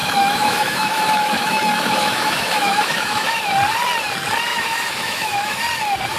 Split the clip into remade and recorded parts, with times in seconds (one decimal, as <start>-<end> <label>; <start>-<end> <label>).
0.0-3.5 remade; 3.5-4.5 recorded; 4.5-5.6 remade; 5.6-6.2 recorded